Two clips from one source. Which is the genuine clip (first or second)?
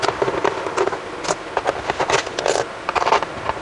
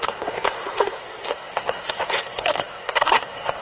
first